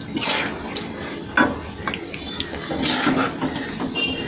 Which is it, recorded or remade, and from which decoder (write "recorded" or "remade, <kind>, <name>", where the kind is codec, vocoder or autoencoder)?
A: recorded